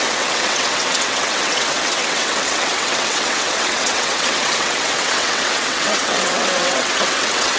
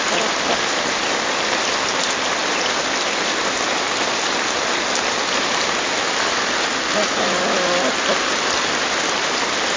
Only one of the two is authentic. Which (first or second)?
second